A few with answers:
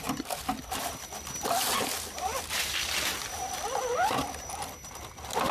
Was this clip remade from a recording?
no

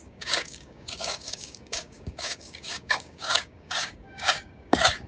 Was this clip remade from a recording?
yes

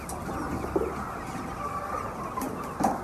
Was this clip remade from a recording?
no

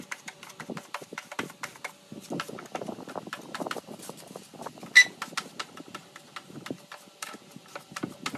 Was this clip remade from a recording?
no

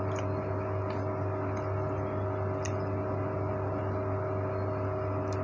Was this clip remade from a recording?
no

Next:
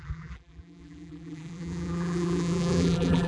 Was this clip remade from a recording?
yes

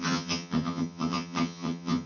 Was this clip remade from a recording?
yes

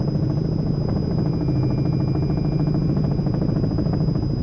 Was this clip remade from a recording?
no